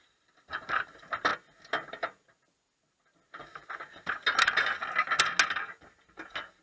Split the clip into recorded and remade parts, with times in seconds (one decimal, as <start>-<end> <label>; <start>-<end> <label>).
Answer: 0.0-6.6 recorded